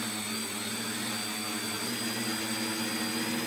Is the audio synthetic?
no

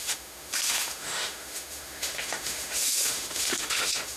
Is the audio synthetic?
yes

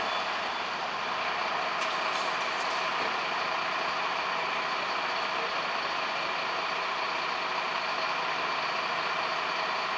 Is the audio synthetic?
no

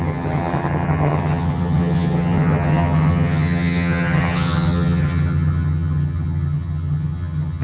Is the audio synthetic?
yes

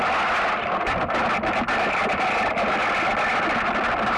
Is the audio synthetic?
no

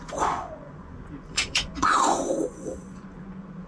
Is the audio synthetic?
yes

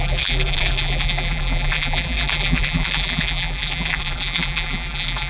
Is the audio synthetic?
yes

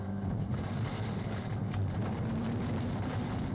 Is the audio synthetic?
yes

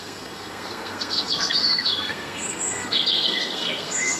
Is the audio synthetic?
yes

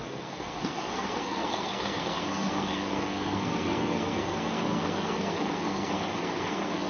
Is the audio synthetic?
yes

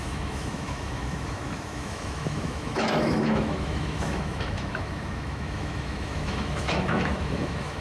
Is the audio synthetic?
yes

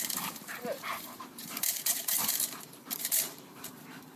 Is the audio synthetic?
yes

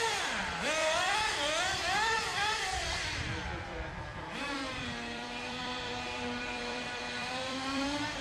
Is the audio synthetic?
yes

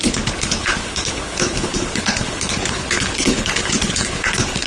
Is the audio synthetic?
yes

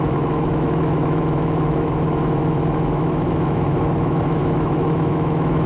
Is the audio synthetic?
yes